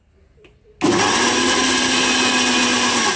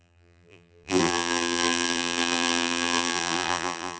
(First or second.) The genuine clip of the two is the first